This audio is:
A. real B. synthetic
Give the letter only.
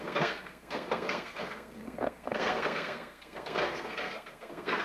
B